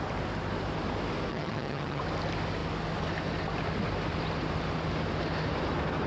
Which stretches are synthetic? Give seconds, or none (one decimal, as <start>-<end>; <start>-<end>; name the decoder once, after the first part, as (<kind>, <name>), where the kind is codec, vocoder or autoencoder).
1.3-2.0 (vocoder, HiFi-GAN)